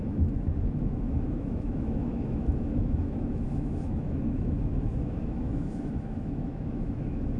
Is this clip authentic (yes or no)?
no